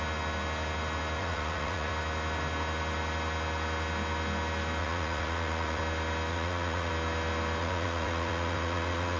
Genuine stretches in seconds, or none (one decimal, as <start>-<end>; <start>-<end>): 0.0-1.2; 1.9-4.8; 5.8-6.3; 6.9-7.6